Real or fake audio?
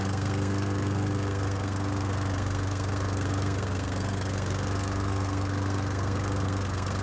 fake